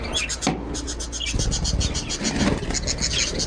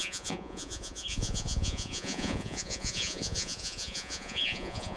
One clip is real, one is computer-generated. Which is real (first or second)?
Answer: first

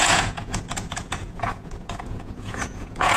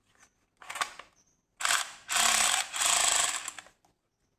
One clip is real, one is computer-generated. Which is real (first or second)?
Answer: second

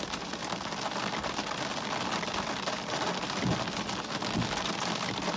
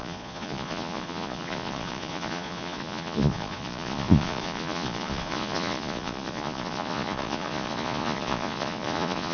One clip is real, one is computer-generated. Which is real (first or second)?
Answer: first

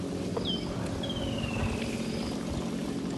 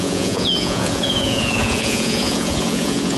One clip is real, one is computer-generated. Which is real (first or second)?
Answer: first